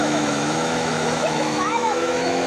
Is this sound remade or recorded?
remade